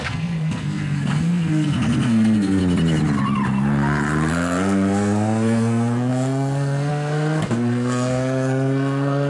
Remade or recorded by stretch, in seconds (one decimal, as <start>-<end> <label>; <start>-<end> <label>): 0.0-2.6 remade; 2.6-4.3 recorded; 4.3-9.3 remade